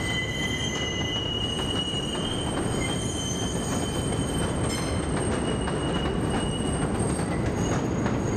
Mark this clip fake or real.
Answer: real